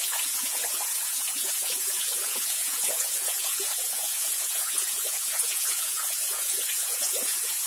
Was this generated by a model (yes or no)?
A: yes